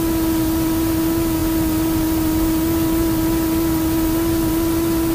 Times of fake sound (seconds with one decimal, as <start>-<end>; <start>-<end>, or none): none